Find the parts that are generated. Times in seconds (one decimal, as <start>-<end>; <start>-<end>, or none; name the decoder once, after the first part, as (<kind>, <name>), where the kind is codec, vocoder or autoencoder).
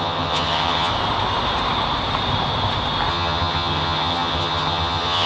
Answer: 0.0-0.9 (vocoder, HiFi-GAN); 3.1-5.3